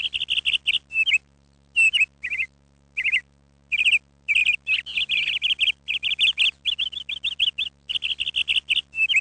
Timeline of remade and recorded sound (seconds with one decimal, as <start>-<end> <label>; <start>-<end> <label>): 0.0-9.2 recorded